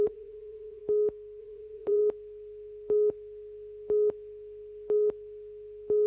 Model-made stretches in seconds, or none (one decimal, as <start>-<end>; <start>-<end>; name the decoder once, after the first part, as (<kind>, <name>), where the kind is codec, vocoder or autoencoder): 0.0-0.8 (vocoder, Vocos); 1.4-2.0

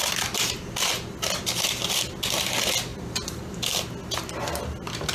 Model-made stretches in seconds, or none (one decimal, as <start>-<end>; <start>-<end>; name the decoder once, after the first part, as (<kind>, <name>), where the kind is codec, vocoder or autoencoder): none

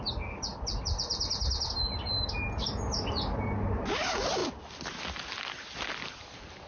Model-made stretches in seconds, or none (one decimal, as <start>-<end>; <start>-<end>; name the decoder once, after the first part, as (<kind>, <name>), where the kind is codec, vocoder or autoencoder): none

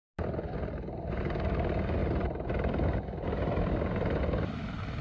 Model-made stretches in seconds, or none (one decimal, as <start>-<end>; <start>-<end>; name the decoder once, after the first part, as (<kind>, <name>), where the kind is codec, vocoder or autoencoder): none

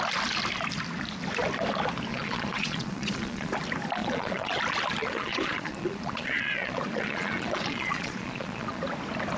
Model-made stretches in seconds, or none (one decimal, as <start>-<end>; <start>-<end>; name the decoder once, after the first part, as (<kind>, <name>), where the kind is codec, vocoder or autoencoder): 2.1-3.5 (vocoder, Vocos); 4.0-4.6; 5.0-8.8

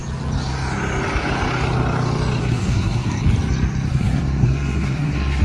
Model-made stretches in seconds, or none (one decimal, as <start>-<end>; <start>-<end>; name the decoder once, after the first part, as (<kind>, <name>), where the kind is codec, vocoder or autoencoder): 2.4-3.2 (codec, SNAC); 3.9-5.4

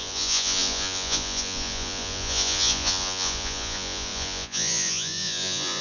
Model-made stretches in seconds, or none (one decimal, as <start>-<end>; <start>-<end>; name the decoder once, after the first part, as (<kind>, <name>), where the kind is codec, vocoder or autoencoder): 0.0-5.8 (vocoder, Vocos)